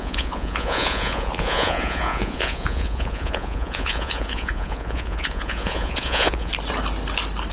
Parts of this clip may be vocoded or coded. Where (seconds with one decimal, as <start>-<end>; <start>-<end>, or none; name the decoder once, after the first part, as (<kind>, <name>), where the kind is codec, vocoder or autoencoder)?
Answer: 0.0-6.5 (vocoder, Vocos)